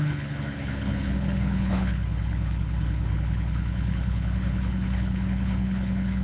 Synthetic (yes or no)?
yes